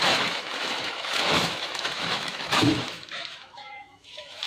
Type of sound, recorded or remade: remade